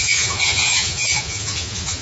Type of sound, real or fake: fake